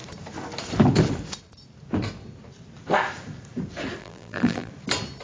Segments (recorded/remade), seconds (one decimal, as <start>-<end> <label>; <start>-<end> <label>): 0.0-4.0 recorded; 4.0-4.7 remade; 4.7-5.2 recorded